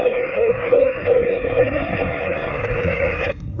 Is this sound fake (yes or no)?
yes